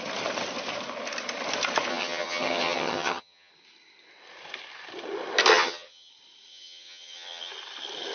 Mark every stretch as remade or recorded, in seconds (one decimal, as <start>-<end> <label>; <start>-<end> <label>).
0.0-1.9 recorded; 1.9-3.5 remade; 3.5-5.5 recorded; 5.5-6.1 remade; 6.1-6.5 recorded; 6.5-7.5 remade; 7.5-8.1 recorded